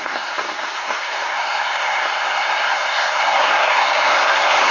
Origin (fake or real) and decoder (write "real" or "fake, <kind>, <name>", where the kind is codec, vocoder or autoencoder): fake, codec, SNAC